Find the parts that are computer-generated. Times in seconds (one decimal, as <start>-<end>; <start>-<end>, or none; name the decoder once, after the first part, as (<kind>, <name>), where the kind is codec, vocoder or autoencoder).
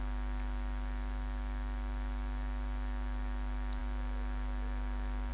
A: none